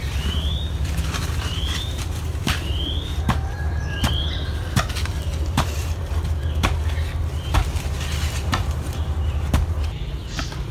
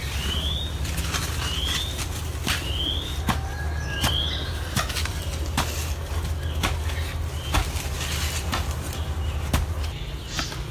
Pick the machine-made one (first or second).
first